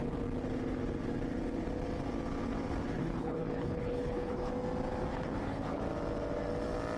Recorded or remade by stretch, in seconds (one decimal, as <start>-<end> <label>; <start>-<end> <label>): 0.0-3.0 recorded; 3.0-4.5 remade; 4.5-5.1 recorded; 5.1-5.8 remade; 5.8-7.0 recorded